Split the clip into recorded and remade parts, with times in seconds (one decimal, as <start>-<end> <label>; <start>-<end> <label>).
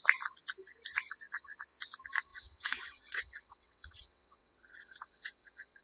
0.0-2.3 recorded; 2.3-5.8 remade